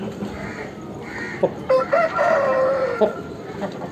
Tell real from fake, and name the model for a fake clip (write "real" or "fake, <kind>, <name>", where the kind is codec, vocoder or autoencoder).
fake, vocoder, BigVGAN v2